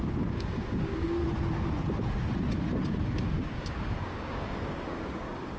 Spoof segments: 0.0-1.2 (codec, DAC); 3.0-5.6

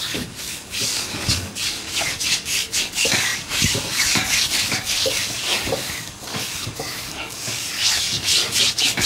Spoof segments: 0.0-9.1 (codec, DAC)

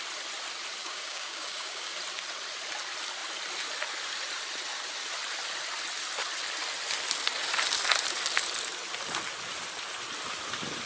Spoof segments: 0.8-1.9 (codec, DAC)

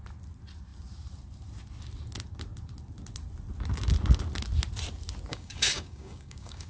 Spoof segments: 5.3-6.7 (codec, DAC)

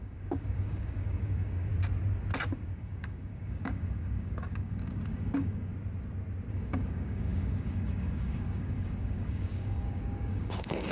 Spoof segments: 0.0-1.7 (codec, DAC); 2.5-5.7; 6.5-10.9

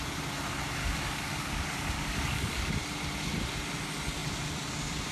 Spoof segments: 0.8-2.8 (codec, DAC)

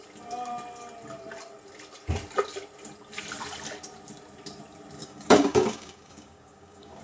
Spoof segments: 5.0-7.0 (codec, DAC)

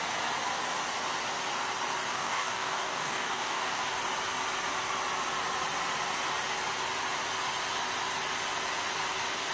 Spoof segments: 2.1-3.8 (codec, DAC)